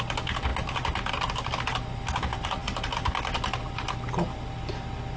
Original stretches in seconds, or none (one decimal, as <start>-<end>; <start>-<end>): 0.0-5.2